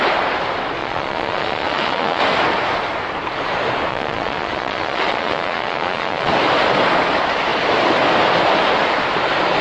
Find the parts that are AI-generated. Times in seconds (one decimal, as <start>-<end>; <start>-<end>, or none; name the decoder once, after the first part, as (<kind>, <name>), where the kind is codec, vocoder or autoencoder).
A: 0.8-2.2 (vocoder, Vocos); 3.9-6.3